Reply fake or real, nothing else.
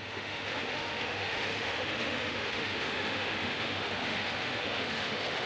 fake